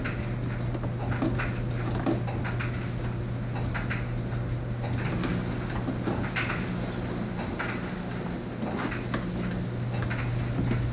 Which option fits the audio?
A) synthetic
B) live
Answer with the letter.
B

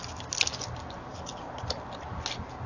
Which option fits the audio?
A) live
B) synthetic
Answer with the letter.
A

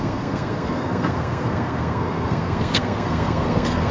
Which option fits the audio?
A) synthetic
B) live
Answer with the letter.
A